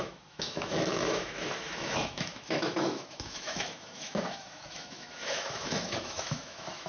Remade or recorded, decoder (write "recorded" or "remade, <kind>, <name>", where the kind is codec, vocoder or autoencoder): remade, autoencoder, DAC-VAE